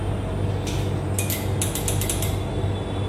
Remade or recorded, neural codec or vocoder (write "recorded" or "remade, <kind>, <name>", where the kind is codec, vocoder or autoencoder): recorded